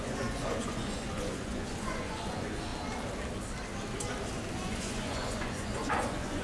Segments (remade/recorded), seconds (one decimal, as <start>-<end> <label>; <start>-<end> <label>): 0.0-2.7 remade; 2.7-4.5 recorded; 4.5-6.4 remade